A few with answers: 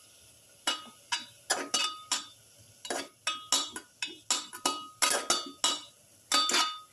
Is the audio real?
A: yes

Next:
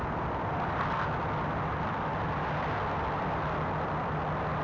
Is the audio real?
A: yes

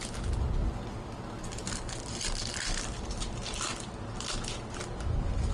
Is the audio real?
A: yes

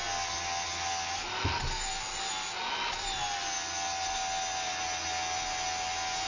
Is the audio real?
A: yes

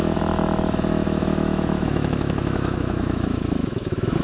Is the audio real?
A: no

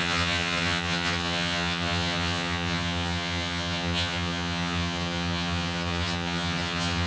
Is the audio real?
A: no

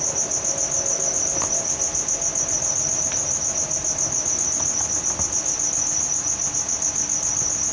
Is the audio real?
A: yes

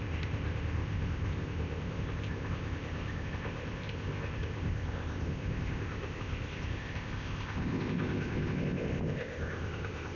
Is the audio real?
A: no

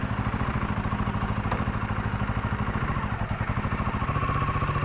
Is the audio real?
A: yes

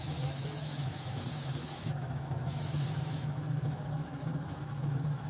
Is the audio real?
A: no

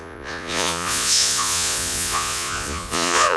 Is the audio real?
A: no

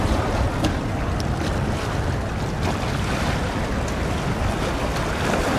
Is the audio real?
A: yes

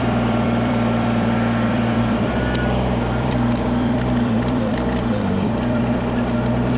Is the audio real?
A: no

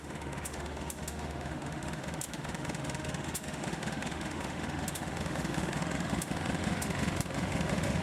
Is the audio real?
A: no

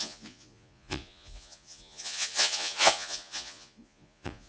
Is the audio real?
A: no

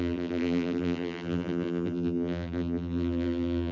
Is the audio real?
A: no